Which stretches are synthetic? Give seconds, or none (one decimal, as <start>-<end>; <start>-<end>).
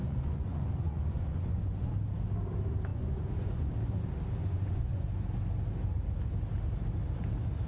0.0-1.9; 2.9-3.7; 4.4-5.0